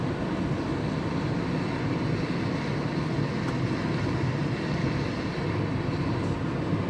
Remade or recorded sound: recorded